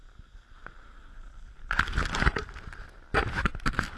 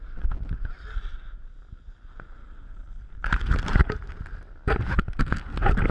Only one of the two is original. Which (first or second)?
second